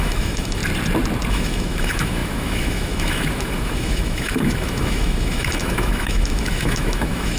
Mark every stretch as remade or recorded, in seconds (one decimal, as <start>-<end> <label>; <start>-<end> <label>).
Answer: 0.0-0.6 remade; 0.6-1.3 recorded; 1.3-7.4 remade